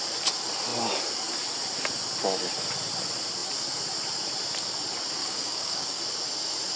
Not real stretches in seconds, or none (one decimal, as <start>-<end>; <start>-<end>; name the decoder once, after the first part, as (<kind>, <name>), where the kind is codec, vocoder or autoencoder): 5.2-6.0 (codec, DAC)